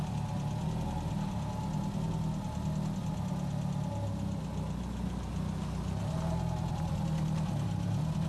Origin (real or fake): real